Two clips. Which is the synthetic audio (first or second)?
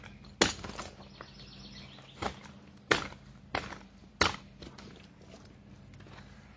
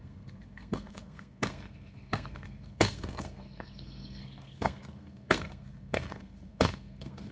second